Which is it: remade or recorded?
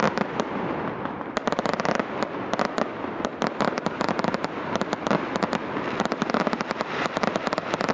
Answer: recorded